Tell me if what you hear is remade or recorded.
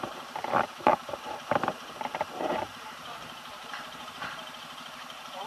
remade